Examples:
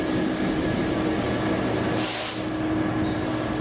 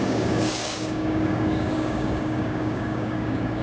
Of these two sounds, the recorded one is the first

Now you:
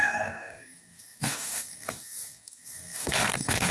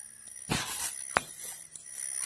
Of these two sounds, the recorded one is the second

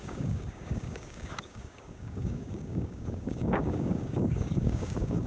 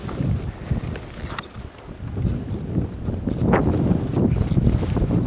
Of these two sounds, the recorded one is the second